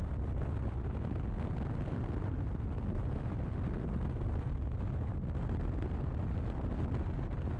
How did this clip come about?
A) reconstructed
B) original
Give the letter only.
B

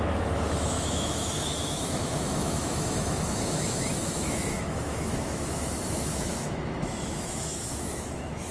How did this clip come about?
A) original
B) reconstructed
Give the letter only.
B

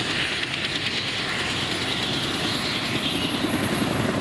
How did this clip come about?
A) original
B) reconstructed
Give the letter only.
A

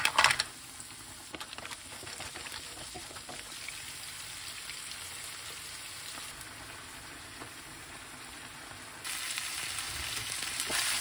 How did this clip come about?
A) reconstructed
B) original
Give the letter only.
B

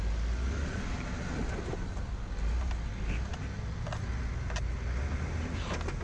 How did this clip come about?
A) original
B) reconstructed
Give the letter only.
A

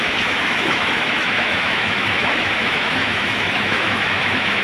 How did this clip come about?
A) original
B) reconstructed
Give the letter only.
B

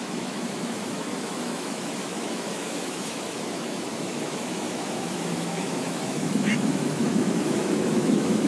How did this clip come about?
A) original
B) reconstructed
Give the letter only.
B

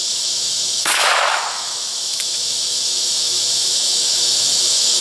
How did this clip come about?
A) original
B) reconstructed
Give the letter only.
B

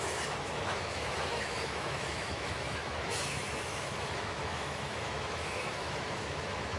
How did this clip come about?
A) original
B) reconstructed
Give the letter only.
B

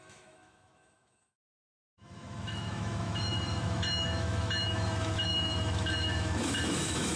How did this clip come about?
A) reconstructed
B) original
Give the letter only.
A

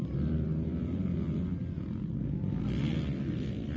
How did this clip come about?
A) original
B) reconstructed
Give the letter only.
A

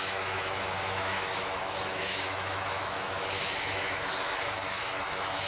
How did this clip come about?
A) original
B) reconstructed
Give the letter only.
B